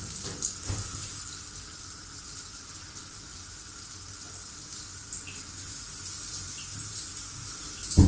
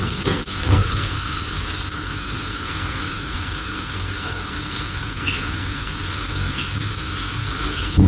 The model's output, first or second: second